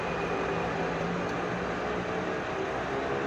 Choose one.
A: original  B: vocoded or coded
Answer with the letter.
A